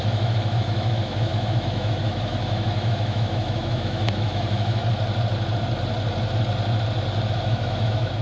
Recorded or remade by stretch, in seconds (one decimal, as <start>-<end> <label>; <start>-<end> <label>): 0.0-4.8 remade; 4.8-7.3 recorded; 7.3-8.2 remade